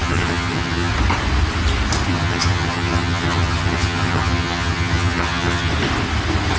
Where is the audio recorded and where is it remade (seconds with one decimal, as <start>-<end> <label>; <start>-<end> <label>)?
0.0-0.9 remade; 0.9-2.1 recorded; 2.1-5.7 remade; 5.7-6.6 recorded